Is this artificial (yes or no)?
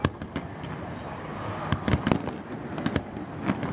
no